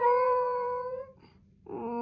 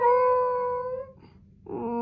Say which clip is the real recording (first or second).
second